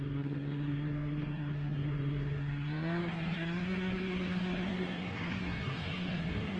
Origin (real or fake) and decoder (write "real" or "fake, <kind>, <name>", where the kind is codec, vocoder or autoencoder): fake, codec, SNAC